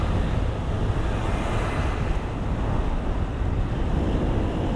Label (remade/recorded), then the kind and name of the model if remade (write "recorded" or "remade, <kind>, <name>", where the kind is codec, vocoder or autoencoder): recorded